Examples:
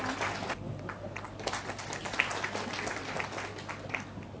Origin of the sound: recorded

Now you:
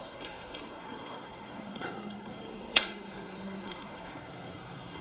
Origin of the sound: remade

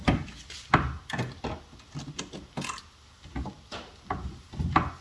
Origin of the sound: recorded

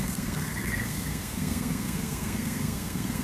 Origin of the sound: remade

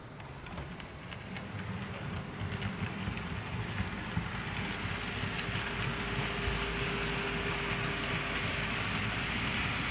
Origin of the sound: recorded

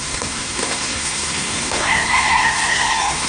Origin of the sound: remade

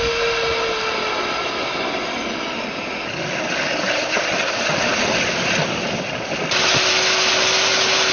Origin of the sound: recorded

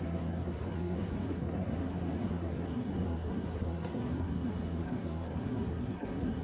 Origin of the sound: remade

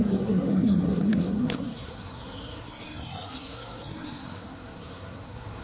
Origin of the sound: remade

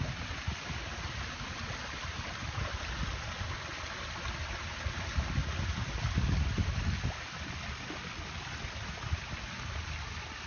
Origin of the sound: recorded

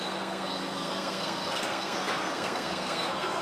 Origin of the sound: remade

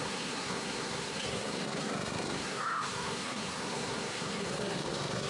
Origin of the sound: remade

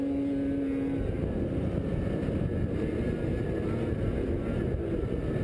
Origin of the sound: recorded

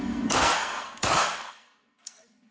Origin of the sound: remade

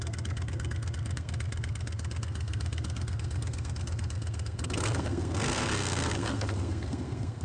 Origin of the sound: remade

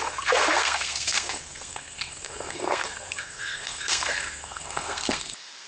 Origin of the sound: remade